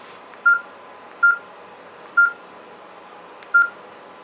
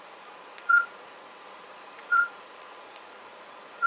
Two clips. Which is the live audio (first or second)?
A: first